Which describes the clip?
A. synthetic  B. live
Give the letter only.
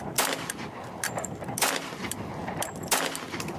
B